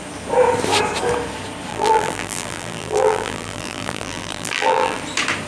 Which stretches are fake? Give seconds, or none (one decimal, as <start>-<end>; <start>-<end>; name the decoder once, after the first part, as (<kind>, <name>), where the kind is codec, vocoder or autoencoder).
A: 1.7-5.0 (vocoder, BigVGAN v2)

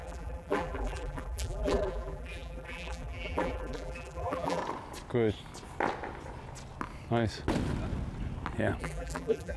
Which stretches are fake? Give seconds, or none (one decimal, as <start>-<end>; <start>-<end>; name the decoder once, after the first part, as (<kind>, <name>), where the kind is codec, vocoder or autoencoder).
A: 0.0-4.6 (vocoder, BigVGAN v2); 8.8-9.6

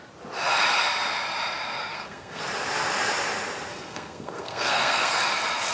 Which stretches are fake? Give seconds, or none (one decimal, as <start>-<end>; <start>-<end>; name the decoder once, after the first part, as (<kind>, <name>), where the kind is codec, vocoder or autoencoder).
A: 1.8-2.4 (codec, SNAC); 3.7-5.2

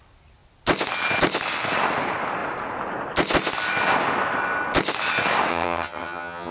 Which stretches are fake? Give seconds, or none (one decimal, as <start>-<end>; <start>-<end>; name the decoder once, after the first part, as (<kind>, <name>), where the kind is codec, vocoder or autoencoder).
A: 5.5-6.5 (vocoder, HiFi-GAN)